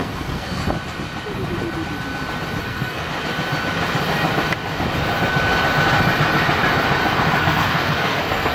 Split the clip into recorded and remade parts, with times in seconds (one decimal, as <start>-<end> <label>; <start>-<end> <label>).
0.0-0.6 remade; 0.6-2.6 recorded; 2.6-3.1 remade; 3.1-7.4 recorded; 7.4-8.5 remade